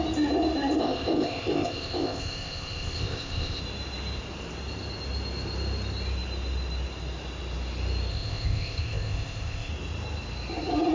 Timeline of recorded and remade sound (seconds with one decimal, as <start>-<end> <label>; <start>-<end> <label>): 0.0-0.8 recorded; 0.8-3.6 remade; 3.6-8.1 recorded; 8.1-9.7 remade; 9.7-10.9 recorded